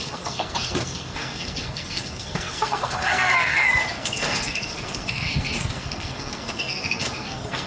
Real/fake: fake